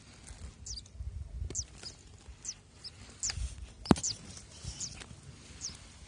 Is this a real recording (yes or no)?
yes